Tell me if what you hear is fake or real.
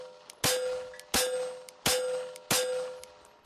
real